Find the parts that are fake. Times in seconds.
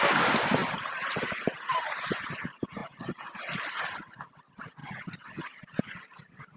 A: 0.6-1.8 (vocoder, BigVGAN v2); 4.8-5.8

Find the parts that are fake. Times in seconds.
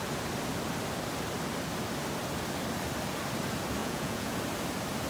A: 3.8-4.4 (vocoder, Vocos)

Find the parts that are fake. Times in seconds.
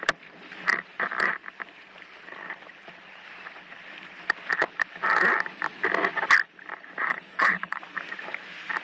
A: 7.1-7.8 (codec, HILCodec)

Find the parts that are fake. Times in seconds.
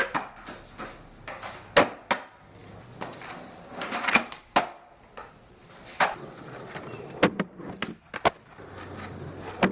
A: none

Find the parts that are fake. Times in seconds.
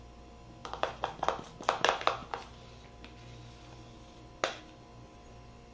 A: none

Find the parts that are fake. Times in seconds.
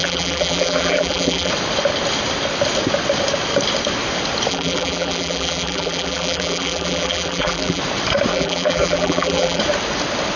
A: 0.0-1.5 (vocoder, BigVGAN v2); 4.5-7.8; 8.3-9.6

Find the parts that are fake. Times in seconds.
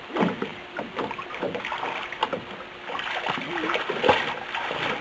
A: none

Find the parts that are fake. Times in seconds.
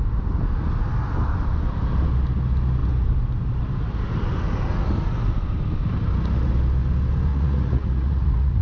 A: 7.3-8.6 (vocoder, Vocos)